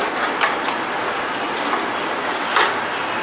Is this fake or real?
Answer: real